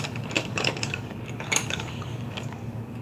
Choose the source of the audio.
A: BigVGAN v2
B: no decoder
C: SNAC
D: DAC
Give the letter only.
D